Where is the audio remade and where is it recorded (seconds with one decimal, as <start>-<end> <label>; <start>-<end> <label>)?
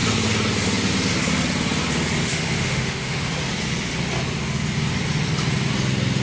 0.0-2.2 recorded; 2.2-3.3 remade; 3.3-6.2 recorded